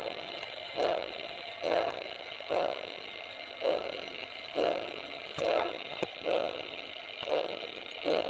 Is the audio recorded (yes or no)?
no